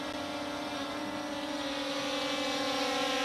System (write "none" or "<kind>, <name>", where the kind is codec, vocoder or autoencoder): none